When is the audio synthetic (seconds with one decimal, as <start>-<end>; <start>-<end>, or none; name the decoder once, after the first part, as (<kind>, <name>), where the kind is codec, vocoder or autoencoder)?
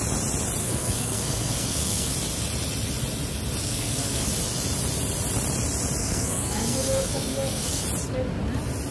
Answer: 0.6-2.1 (codec, SNAC); 3.6-4.3; 6.0-7.8